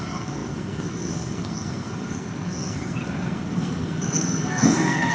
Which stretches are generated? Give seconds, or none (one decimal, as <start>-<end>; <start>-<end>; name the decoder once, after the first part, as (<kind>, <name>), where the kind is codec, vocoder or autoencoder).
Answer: 0.0-5.1 (codec, SNAC)